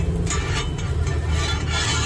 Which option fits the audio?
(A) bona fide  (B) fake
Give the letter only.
A